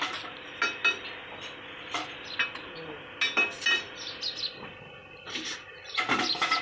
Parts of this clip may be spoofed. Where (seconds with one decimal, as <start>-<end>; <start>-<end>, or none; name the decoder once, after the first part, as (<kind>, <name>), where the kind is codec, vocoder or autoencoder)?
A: none